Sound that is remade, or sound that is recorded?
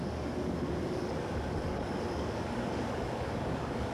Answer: remade